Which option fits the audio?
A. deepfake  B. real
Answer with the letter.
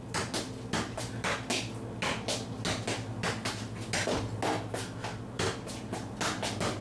B